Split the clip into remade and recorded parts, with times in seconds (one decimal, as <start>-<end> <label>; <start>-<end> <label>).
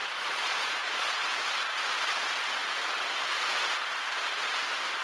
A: 0.0-1.2 remade; 1.2-5.0 recorded